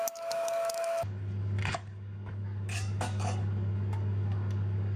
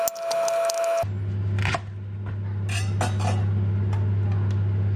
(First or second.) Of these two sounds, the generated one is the first